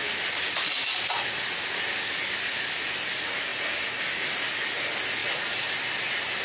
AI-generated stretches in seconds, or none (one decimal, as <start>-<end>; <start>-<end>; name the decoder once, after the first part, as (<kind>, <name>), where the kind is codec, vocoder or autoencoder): none